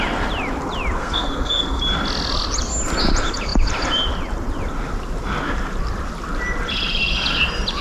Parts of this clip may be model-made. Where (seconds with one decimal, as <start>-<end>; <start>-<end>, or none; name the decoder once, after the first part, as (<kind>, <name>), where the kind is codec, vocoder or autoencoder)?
1.0-1.8 (codec, SNAC)